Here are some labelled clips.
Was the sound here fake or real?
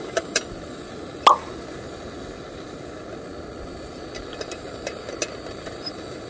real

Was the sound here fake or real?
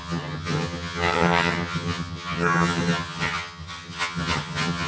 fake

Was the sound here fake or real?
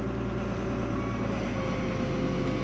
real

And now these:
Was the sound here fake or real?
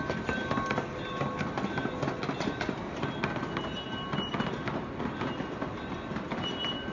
real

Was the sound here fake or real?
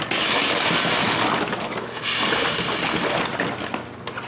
real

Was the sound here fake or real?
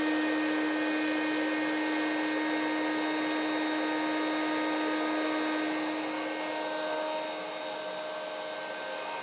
real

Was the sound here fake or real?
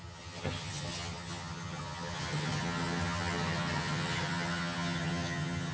fake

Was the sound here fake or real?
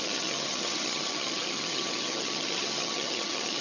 fake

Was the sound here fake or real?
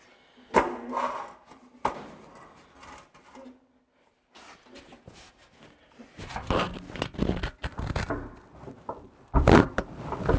real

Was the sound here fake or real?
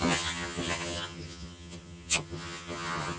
fake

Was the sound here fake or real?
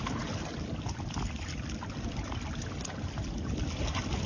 real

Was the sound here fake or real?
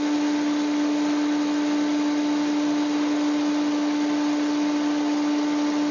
real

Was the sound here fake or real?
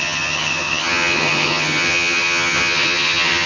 fake